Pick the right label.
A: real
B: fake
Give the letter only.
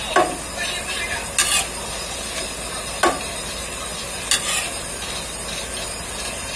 A